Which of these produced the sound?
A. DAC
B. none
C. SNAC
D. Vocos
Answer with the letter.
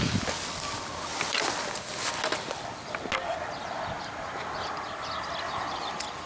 B